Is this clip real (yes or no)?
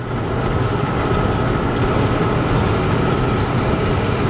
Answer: yes